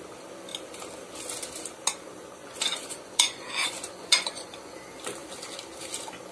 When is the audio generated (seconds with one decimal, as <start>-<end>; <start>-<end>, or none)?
2.4-4.7